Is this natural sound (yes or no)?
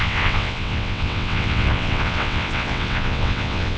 no